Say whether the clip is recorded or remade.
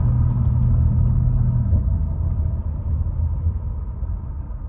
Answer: recorded